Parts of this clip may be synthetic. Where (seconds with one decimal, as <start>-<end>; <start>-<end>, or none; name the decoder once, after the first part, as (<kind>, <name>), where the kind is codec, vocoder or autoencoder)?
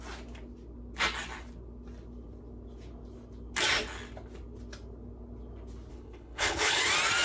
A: 5.9-6.8 (codec, HILCodec)